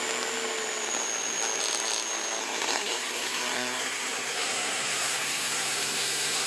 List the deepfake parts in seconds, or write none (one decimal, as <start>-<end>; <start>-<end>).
2.4-6.5